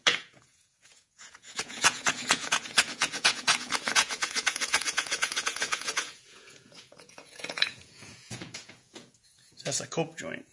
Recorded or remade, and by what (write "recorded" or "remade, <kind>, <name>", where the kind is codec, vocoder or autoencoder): remade, vocoder, Vocos